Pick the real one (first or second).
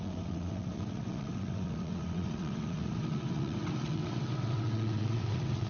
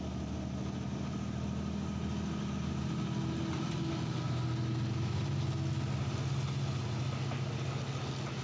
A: second